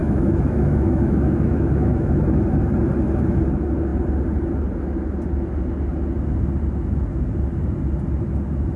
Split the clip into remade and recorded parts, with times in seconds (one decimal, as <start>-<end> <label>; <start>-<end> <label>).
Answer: 0.0-2.2 remade; 2.2-8.8 recorded